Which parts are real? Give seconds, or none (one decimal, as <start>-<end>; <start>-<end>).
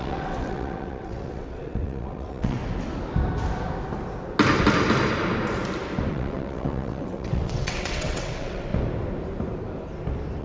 2.6-6.1; 8.7-10.4